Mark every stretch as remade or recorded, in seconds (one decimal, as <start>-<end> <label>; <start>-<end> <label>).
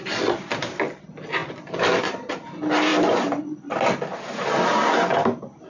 0.0-1.4 recorded; 1.4-2.3 remade; 2.3-5.7 recorded